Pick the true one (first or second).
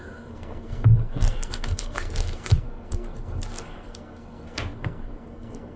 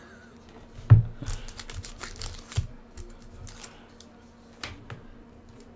second